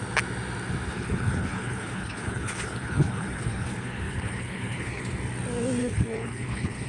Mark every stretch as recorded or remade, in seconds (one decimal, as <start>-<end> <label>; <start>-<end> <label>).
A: 0.0-0.9 recorded; 0.9-5.0 remade; 5.0-5.8 recorded; 5.8-6.9 remade